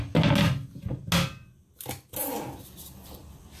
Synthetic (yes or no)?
no